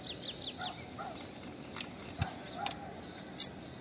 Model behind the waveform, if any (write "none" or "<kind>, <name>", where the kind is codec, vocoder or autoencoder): none